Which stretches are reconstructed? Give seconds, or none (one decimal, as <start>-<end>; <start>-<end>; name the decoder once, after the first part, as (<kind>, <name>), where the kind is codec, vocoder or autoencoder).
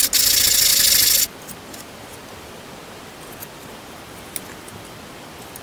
none